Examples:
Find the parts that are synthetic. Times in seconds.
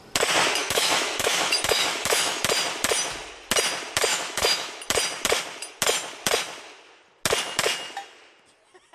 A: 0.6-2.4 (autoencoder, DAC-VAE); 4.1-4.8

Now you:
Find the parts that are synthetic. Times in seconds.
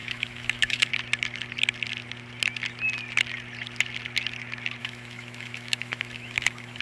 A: 0.0-0.9 (autoencoder, DAC-VAE); 4.8-6.8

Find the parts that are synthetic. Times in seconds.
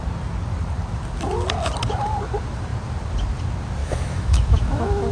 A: 3.8-5.1 (autoencoder, DAC-VAE)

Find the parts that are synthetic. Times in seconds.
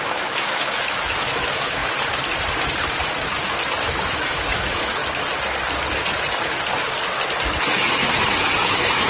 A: 0.0-1.8 (autoencoder, DAC-VAE); 3.8-5.0; 8.4-9.1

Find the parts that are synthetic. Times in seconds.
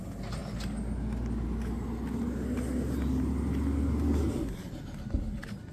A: none